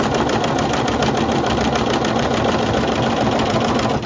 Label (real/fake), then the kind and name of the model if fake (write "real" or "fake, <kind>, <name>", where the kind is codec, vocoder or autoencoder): real